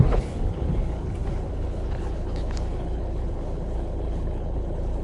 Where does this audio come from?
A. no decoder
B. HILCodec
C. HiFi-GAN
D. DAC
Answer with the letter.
B